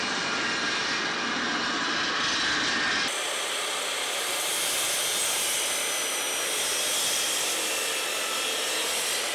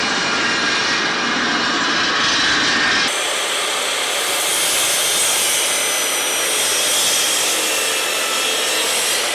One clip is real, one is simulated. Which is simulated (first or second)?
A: first